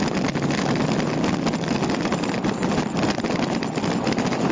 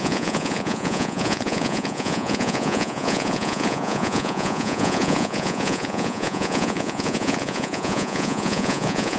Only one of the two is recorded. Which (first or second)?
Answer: first